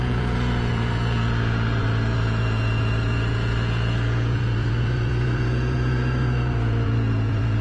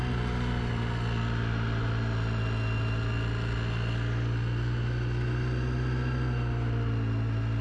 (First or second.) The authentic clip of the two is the second